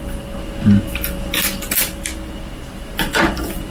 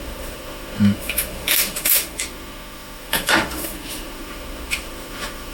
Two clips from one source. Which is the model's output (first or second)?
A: second